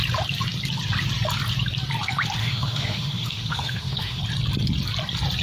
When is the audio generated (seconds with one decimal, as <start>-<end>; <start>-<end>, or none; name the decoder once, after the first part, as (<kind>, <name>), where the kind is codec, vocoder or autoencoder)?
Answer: 2.4-4.2 (autoencoder, DAC-VAE)